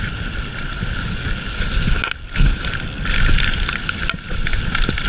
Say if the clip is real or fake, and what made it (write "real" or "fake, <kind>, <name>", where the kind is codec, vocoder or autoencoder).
real